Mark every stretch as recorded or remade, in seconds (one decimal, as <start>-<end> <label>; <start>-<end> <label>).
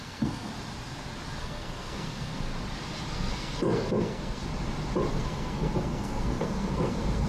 0.0-0.5 remade; 0.5-1.4 recorded; 1.4-2.5 remade; 2.5-3.1 recorded; 3.1-4.4 remade; 4.4-5.1 recorded; 5.1-7.3 remade